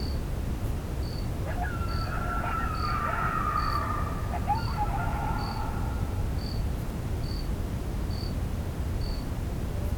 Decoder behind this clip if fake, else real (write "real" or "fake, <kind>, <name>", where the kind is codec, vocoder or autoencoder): real